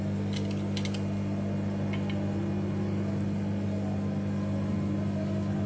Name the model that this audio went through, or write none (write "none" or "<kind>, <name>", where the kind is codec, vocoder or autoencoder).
none